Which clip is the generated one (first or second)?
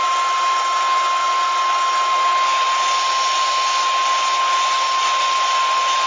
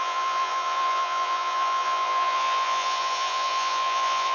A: second